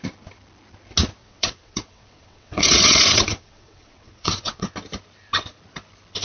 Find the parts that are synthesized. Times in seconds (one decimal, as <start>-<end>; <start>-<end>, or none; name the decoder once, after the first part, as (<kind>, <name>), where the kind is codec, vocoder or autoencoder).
1.2-4.7 (vocoder, WaveNeXt)